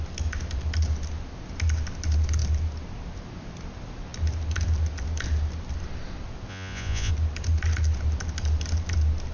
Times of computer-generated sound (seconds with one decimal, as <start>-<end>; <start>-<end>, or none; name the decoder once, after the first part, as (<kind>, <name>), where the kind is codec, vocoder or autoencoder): 6.5-7.1 (vocoder, Vocos)